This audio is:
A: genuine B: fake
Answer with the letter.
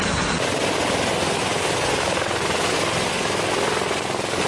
A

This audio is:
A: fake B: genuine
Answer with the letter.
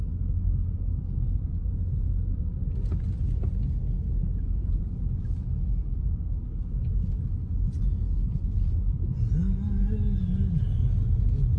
B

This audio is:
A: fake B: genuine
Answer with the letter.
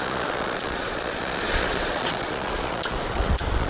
A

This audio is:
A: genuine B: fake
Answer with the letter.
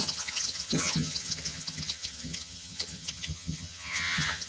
B